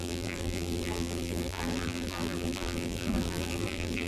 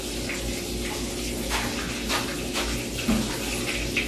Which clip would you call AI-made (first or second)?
first